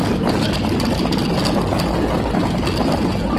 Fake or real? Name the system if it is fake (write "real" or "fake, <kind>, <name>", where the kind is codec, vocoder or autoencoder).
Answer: real